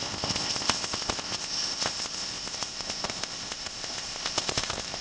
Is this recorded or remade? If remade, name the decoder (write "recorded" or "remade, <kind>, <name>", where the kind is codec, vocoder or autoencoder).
remade, codec, ZipCodec